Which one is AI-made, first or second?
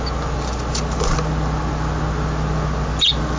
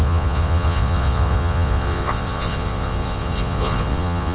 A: second